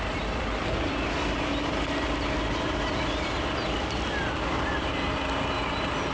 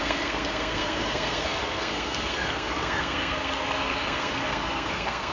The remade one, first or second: second